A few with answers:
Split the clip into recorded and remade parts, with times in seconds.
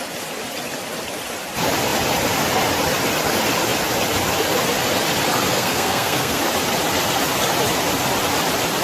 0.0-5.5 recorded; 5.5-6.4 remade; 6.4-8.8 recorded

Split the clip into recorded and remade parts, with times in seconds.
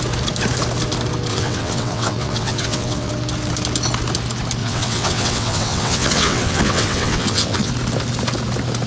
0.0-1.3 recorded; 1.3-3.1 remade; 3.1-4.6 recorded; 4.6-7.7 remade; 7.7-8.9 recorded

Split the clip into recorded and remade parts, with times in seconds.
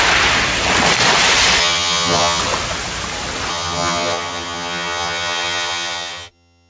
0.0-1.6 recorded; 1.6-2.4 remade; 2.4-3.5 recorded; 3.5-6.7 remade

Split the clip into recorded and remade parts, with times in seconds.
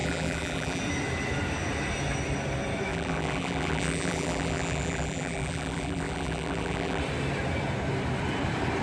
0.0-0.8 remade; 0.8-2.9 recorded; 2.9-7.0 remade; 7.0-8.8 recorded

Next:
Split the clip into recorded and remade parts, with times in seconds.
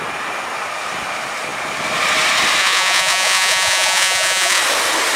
0.0-2.6 recorded; 2.6-4.6 remade; 4.6-5.2 recorded